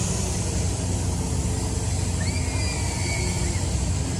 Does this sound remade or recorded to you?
recorded